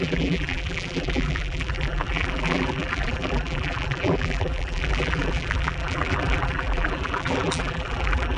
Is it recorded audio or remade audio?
remade